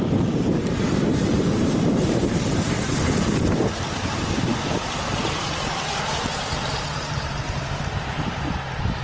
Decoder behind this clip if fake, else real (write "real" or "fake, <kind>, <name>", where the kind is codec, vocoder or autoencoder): fake, vocoder, BigVGAN v2